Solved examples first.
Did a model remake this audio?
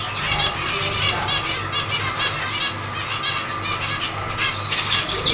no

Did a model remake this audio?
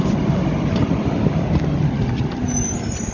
no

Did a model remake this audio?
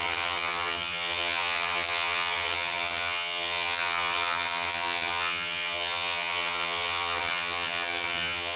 yes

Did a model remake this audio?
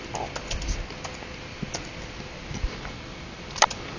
no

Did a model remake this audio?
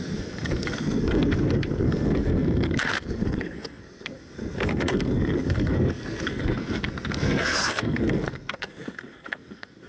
yes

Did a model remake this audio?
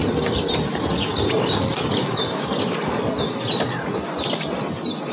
yes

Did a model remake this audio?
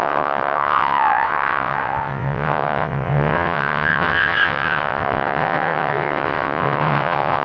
yes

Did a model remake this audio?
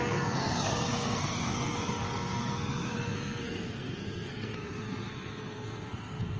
yes